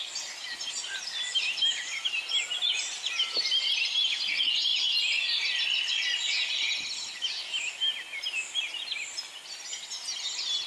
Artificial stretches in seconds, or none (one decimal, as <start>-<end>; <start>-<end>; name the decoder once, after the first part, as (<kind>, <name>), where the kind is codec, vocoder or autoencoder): none